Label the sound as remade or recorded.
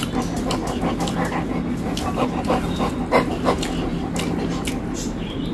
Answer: recorded